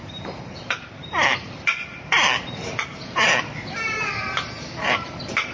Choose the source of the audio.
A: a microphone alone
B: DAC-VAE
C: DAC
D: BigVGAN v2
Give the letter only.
D